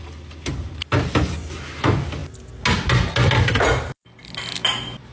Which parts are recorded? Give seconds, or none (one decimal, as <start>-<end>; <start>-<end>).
0.0-5.1